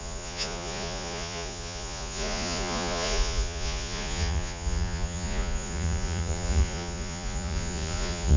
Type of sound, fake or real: fake